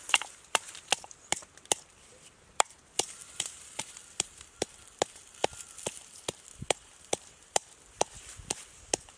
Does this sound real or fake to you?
fake